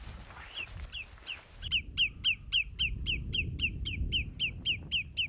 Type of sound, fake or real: real